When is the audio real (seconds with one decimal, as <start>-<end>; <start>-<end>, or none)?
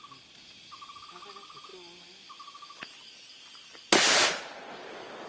0.0-5.3